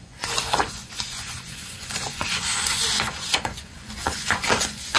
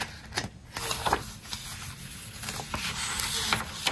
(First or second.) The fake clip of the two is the first